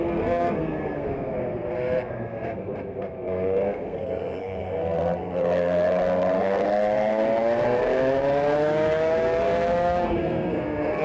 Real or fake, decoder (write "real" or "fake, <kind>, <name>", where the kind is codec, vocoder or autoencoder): fake, codec, SNAC